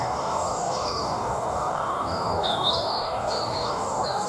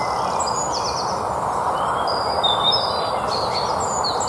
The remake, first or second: first